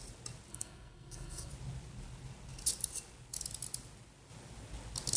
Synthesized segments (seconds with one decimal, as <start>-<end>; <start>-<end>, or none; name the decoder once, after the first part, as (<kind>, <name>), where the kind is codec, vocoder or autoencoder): 0.5-1.5 (codec, SNAC)